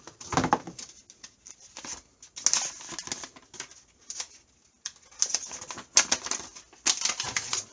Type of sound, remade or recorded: recorded